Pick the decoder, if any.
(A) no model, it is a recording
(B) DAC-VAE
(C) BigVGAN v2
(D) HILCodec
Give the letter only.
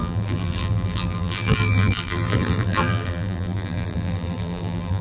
C